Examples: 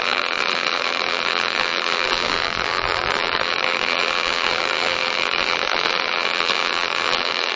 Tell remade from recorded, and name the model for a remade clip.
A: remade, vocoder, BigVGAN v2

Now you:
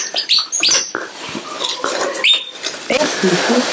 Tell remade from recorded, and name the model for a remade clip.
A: remade, vocoder, BigVGAN v2